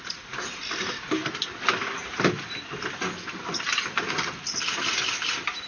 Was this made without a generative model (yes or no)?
yes